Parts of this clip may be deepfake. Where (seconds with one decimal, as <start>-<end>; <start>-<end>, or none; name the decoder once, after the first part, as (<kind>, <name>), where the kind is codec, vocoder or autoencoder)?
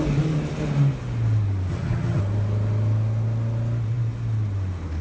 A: 1.7-2.2 (vocoder, HiFi-GAN)